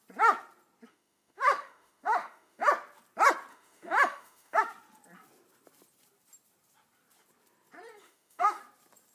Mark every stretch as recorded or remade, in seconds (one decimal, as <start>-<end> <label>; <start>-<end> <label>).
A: 0.0-0.9 recorded; 0.9-2.7 remade; 2.7-3.5 recorded; 3.5-4.6 remade; 4.6-8.0 recorded; 8.0-8.6 remade; 8.6-9.1 recorded